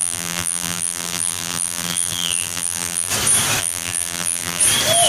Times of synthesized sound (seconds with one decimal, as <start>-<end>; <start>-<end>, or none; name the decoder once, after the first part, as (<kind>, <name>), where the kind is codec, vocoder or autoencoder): 0.0-3.1 (vocoder, BigVGAN v2); 3.6-4.6